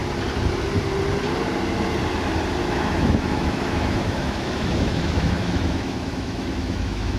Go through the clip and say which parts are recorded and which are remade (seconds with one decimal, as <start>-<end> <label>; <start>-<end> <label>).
0.0-2.6 recorded; 2.6-7.2 remade